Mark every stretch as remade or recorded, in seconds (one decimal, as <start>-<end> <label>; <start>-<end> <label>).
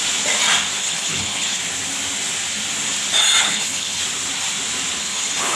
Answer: 0.0-0.8 recorded; 0.8-1.6 remade; 1.6-3.4 recorded; 3.4-4.0 remade; 4.0-5.0 recorded; 5.0-5.6 remade